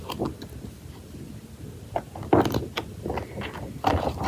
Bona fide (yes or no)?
yes